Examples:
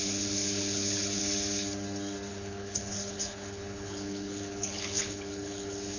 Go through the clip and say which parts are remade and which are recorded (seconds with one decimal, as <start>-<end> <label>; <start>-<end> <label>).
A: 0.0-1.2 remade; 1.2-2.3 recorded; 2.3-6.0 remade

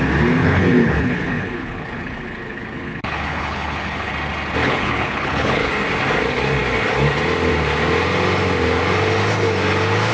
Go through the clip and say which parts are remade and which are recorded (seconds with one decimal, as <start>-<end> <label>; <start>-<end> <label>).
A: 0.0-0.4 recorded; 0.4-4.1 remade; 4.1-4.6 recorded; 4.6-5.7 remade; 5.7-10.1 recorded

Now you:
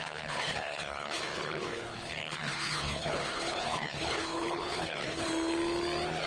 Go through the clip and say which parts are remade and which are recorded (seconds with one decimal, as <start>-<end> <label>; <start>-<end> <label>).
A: 0.0-5.3 remade; 5.3-6.3 recorded

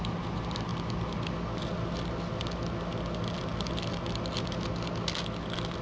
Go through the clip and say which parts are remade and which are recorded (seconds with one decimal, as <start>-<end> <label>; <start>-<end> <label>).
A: 0.0-5.8 recorded

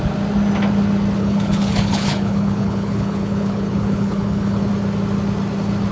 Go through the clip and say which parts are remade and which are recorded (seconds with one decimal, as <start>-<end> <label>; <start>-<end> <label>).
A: 0.0-1.2 recorded; 1.2-4.7 remade; 4.7-5.9 recorded

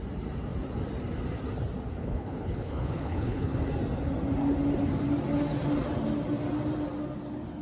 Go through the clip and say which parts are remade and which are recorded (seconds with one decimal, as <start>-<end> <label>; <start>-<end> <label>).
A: 0.0-2.0 recorded; 2.0-3.6 remade; 3.6-7.6 recorded

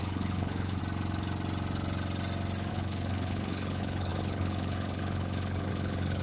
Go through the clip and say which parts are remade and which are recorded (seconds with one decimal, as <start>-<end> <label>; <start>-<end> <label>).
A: 0.0-0.8 remade; 0.8-2.7 recorded; 2.7-6.2 remade

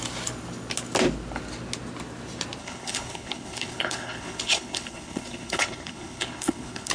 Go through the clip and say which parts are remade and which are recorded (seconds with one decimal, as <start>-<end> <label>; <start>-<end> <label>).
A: 0.0-2.6 recorded; 2.6-6.9 remade